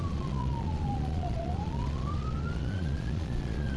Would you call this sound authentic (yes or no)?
no